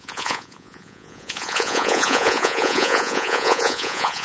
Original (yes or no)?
no